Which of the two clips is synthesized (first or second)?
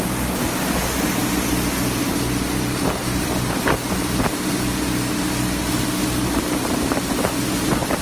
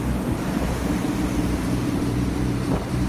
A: second